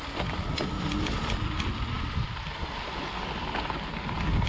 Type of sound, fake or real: real